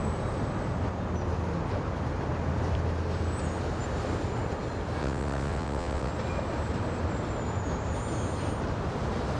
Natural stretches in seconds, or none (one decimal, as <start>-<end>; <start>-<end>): 0.0-5.0; 6.1-9.4